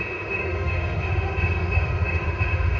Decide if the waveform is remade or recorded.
remade